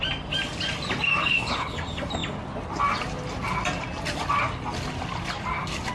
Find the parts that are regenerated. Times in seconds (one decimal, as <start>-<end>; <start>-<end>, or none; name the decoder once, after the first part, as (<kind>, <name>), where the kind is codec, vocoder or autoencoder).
1.2-1.8 (codec, HILCodec)